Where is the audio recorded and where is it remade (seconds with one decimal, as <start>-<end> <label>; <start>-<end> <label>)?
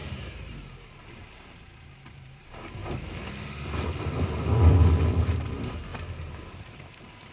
0.0-2.8 remade; 2.8-5.0 recorded; 5.0-7.3 remade